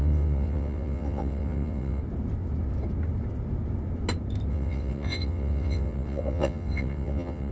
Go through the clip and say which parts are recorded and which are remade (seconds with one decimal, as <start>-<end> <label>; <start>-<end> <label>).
0.0-2.0 remade; 2.0-4.5 recorded; 4.5-7.5 remade